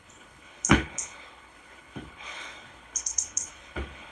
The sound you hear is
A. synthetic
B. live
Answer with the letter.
A